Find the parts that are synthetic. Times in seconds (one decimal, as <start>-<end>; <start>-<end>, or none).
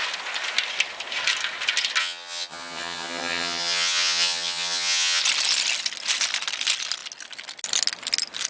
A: 2.0-5.2